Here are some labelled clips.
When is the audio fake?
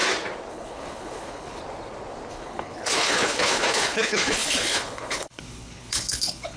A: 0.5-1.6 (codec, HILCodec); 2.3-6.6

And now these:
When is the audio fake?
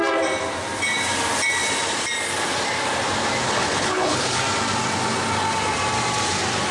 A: 3.4-4.4 (codec, HILCodec)